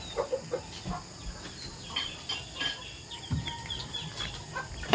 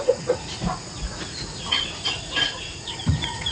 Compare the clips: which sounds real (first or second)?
first